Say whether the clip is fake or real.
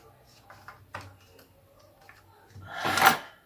real